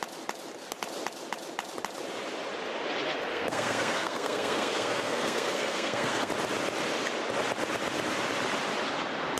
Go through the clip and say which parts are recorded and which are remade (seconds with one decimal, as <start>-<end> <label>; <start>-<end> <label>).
0.0-3.3 recorded; 3.3-6.3 remade; 6.3-9.4 recorded